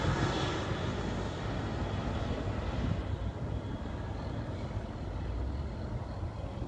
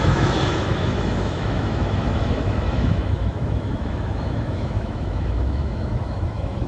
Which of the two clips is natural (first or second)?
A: first